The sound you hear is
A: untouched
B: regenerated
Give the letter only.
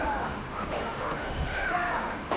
B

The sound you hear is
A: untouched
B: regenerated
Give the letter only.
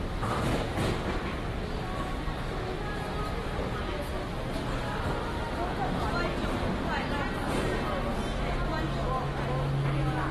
A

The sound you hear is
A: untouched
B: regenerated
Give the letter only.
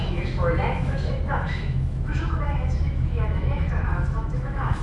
B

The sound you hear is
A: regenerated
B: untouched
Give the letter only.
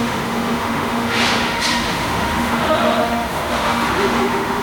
A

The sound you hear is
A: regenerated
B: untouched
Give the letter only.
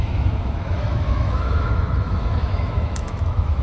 A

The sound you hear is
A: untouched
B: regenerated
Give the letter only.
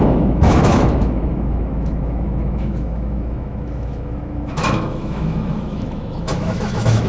B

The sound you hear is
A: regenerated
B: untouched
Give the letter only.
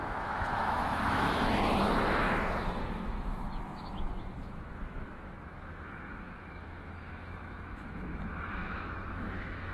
A